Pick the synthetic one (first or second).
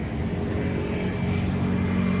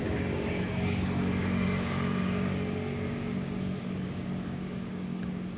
second